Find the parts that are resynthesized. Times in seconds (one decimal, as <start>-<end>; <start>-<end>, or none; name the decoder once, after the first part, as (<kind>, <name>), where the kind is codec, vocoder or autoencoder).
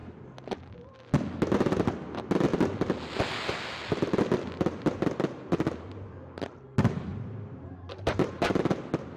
7.1-8.5 (vocoder, BigVGAN v2)